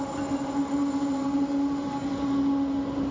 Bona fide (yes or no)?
yes